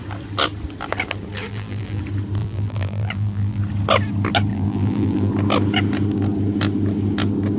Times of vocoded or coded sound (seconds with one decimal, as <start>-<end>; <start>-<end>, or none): 1.5-2.0; 2.4-3.6; 4.5-5.3